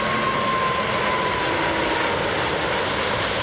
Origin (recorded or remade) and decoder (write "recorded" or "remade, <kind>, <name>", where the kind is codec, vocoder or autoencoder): recorded